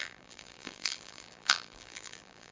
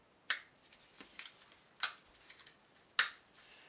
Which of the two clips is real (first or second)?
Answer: second